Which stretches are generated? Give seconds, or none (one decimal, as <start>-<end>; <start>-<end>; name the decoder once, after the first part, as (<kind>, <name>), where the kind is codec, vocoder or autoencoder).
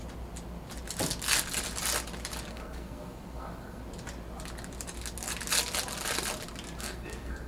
2.5-3.8 (codec, SNAC); 6.8-7.5